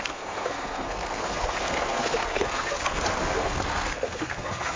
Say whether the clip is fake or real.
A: fake